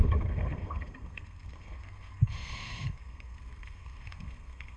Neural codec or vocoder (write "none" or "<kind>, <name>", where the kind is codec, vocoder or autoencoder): codec, SNAC